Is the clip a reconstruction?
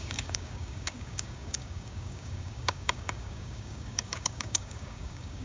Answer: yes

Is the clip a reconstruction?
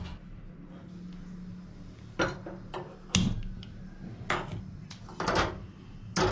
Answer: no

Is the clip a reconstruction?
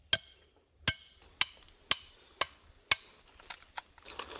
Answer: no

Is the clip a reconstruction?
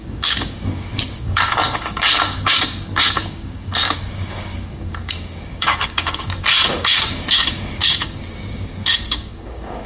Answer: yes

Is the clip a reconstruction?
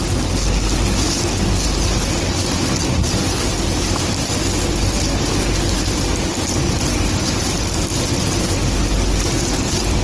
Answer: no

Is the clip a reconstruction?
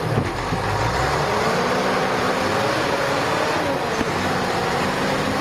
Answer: no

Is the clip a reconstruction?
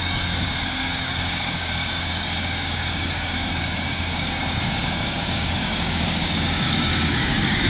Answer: yes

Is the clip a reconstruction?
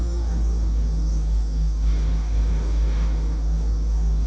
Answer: yes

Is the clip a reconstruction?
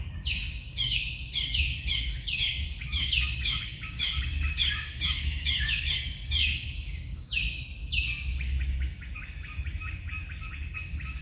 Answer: yes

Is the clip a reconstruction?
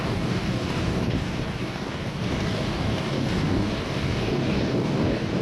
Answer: yes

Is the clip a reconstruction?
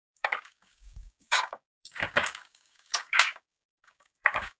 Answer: yes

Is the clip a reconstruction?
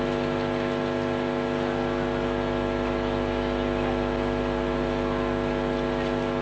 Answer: no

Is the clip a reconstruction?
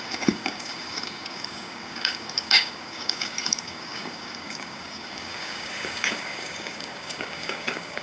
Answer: yes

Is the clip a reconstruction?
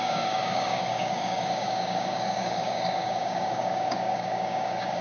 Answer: yes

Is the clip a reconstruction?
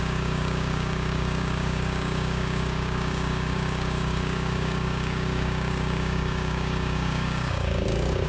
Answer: yes